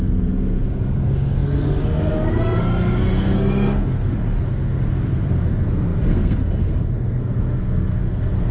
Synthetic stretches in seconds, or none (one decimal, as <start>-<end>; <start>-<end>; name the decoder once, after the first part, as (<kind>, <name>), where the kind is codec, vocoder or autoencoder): 0.0-8.5 (codec, SNAC)